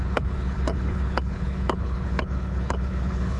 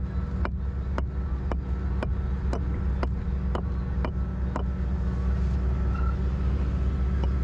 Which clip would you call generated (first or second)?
first